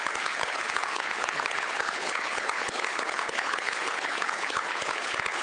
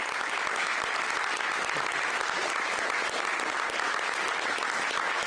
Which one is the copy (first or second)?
first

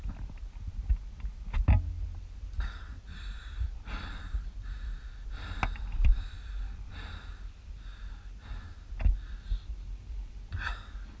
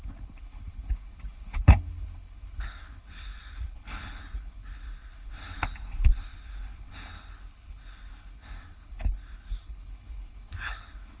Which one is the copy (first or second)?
second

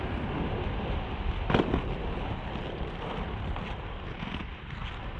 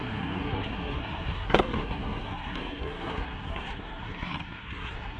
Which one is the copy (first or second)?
second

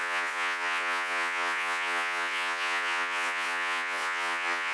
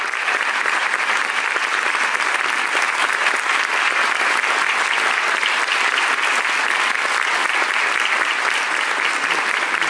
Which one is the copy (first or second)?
first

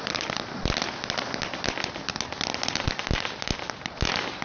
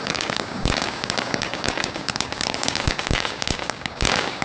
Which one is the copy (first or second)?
second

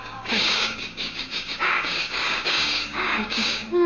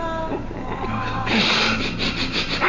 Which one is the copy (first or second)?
first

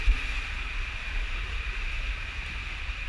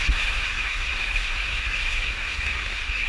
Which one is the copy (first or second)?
second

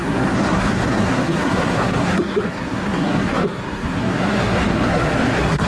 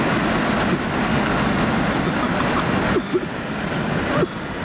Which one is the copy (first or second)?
first